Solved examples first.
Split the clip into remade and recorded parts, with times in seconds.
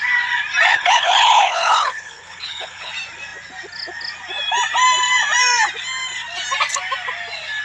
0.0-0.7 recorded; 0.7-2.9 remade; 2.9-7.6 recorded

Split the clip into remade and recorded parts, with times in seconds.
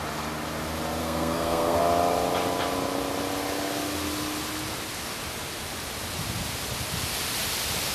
0.0-1.0 recorded; 1.0-1.8 remade; 1.8-7.9 recorded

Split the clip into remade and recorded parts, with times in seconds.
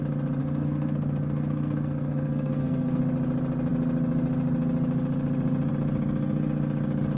0.0-0.4 recorded; 0.4-3.0 remade; 3.0-7.2 recorded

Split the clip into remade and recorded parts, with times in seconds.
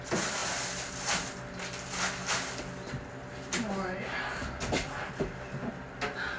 0.0-6.4 recorded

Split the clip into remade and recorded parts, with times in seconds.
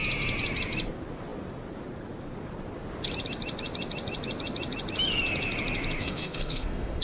0.0-6.0 recorded; 6.0-7.0 remade